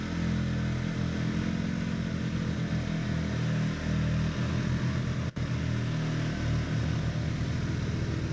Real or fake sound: real